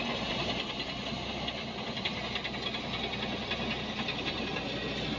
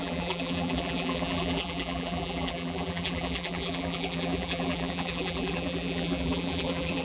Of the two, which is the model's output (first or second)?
second